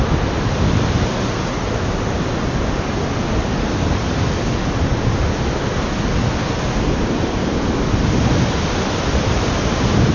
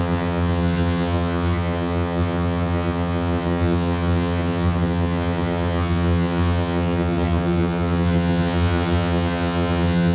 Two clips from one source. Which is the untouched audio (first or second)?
first